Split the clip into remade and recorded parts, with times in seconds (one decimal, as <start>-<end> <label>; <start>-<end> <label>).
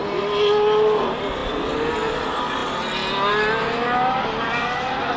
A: 0.0-5.2 recorded